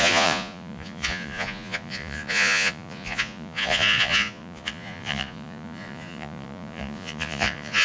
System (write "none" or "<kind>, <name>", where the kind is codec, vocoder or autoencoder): vocoder, Vocos